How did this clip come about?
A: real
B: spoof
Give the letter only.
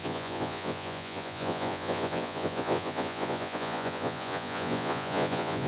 B